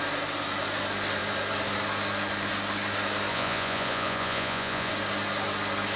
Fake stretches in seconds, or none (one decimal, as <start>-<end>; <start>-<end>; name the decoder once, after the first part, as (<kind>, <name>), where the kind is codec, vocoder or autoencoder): 3.3-4.9 (vocoder, Vocos)